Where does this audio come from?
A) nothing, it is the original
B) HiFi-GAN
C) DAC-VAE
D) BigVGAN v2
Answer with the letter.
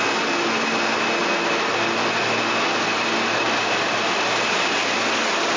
A